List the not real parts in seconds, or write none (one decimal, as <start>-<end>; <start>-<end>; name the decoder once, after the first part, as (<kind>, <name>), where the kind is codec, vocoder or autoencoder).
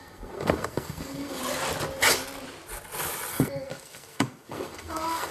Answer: 0.0-1.4 (codec, SNAC); 3.3-5.3